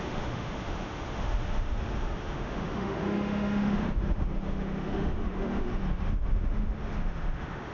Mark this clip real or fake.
fake